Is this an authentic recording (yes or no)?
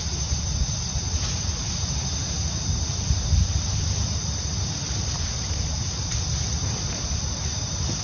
yes